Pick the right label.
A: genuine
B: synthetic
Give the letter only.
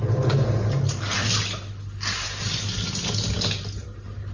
A